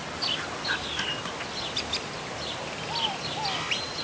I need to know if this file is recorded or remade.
recorded